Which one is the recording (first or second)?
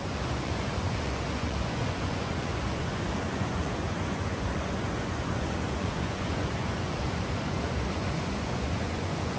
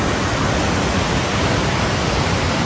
second